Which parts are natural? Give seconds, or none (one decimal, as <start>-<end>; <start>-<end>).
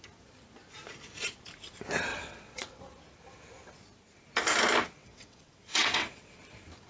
0.0-2.1; 2.8-5.0; 6.4-6.9